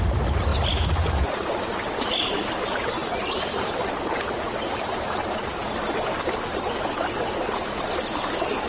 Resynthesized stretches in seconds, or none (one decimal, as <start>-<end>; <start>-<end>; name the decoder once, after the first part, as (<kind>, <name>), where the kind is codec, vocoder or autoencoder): none